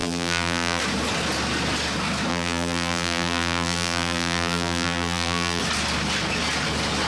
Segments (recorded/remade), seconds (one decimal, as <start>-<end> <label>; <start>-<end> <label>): 0.0-0.8 remade; 0.8-2.3 recorded; 2.3-5.6 remade; 5.6-7.1 recorded